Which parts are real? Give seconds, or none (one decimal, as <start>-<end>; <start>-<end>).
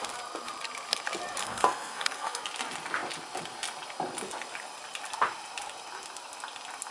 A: 0.0-1.4; 2.4-6.9